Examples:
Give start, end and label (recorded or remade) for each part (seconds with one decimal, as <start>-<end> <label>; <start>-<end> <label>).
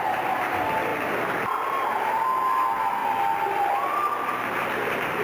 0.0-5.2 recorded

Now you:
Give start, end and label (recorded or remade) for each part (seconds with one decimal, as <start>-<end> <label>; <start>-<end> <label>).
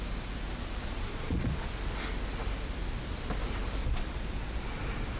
0.0-1.1 recorded; 1.1-1.7 remade; 1.7-3.8 recorded; 3.8-5.2 remade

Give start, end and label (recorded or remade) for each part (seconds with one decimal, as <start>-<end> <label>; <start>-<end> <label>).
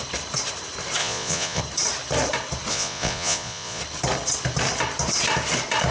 0.0-1.0 recorded; 1.0-1.6 remade; 1.6-2.7 recorded; 2.7-3.8 remade; 3.8-5.9 recorded